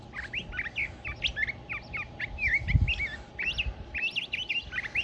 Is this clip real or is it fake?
real